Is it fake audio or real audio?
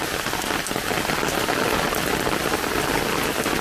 real